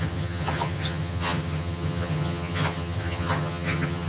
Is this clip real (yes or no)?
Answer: no